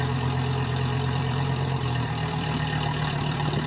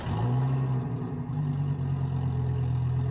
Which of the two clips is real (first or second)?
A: second